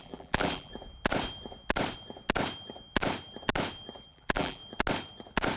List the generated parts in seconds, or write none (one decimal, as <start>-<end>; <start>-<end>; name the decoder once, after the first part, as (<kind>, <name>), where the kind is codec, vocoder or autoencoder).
0.0-0.7 (vocoder, BigVGAN v2); 4.1-4.6